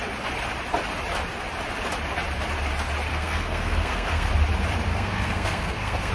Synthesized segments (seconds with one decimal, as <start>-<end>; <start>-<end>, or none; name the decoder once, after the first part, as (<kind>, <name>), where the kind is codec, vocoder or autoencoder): 3.1-4.3 (codec, SNAC); 4.9-6.1